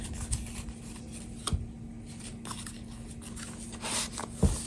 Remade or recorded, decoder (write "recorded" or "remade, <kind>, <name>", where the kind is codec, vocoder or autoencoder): recorded